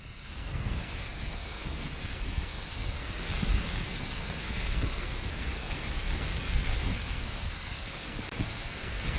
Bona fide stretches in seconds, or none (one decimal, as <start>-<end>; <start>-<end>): none